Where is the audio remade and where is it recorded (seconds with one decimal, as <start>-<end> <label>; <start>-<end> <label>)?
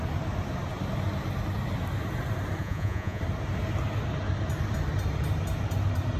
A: 0.0-2.6 recorded; 2.6-3.2 remade; 3.2-6.2 recorded